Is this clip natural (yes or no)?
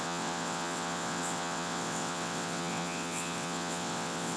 no